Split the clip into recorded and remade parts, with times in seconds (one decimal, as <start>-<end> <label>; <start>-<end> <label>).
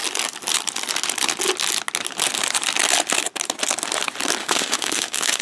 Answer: 0.0-4.4 recorded; 4.4-5.4 remade